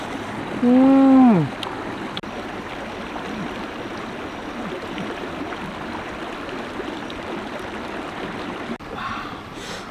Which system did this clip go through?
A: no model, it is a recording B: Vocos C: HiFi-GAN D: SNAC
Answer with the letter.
A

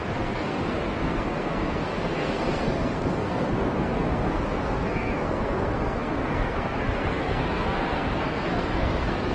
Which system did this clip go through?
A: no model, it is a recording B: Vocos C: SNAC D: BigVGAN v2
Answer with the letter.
C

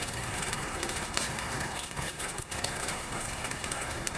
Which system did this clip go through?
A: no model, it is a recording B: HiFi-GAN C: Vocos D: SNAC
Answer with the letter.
D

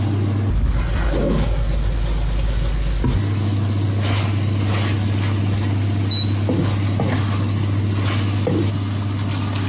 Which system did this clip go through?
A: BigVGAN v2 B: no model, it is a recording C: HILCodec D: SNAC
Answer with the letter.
B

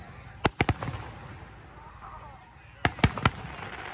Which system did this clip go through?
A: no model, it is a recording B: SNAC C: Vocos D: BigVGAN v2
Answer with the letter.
A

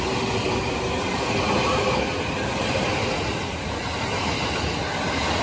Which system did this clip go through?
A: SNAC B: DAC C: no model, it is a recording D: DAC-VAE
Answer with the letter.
C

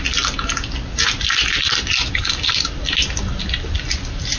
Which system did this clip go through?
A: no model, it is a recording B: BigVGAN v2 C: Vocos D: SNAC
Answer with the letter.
A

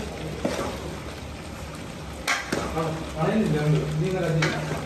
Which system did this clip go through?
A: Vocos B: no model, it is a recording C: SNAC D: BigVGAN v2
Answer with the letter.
B